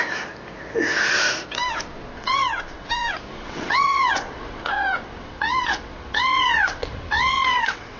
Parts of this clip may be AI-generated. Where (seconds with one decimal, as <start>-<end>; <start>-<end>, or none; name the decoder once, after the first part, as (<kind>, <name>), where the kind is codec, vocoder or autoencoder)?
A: 2.1-2.9 (vocoder, WaveNeXt); 3.3-8.0